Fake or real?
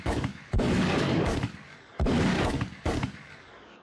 fake